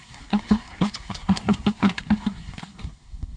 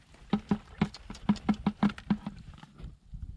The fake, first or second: first